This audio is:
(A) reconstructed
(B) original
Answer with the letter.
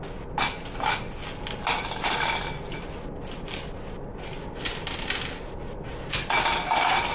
B